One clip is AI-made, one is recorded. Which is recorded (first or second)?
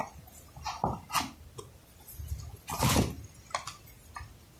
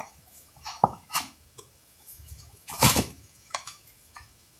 first